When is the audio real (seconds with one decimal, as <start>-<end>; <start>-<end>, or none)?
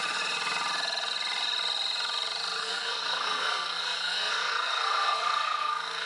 0.0-2.6